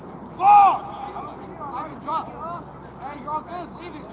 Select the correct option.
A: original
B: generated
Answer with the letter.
A